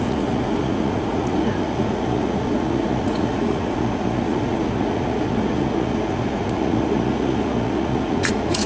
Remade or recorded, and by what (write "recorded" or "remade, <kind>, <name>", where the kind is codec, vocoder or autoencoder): remade, vocoder, Vocos